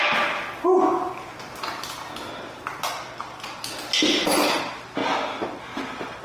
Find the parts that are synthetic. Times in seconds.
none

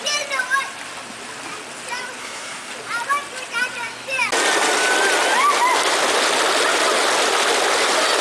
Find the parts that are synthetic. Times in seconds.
2.2-2.7 (codec, SNAC)

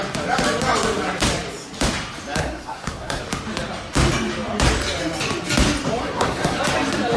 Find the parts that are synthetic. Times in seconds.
2.4-3.2 (codec, SNAC); 6.0-6.6

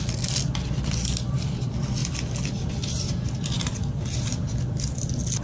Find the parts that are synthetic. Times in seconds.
none